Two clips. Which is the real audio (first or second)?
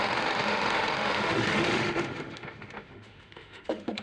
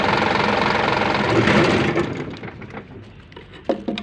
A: second